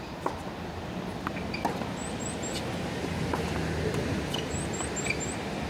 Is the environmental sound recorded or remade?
recorded